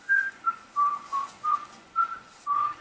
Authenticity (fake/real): fake